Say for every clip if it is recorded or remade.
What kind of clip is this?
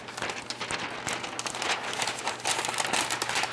recorded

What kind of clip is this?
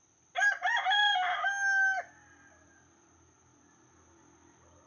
recorded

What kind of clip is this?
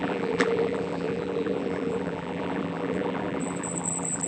remade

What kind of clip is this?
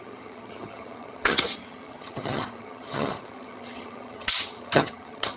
remade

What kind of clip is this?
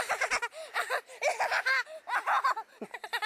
recorded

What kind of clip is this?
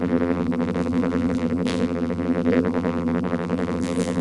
remade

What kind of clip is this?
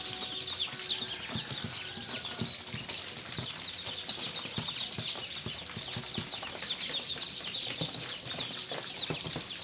recorded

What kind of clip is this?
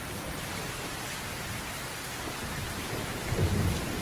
remade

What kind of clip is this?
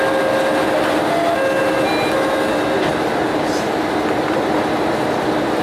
recorded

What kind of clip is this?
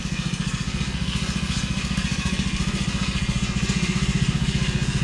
remade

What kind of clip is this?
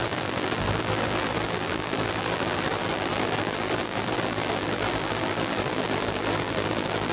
remade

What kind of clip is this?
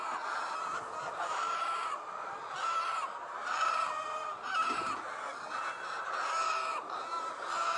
recorded